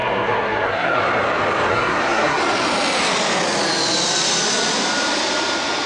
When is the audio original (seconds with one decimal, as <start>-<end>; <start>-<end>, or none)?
1.0-1.7; 2.4-5.9